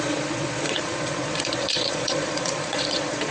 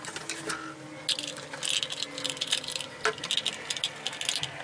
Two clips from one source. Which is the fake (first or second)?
first